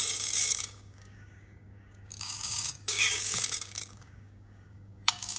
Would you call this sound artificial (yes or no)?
yes